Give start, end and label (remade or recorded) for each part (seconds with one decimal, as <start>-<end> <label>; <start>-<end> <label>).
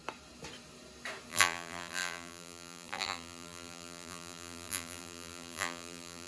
0.0-1.3 recorded; 1.3-6.3 remade